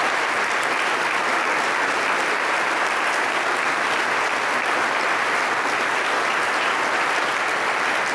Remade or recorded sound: recorded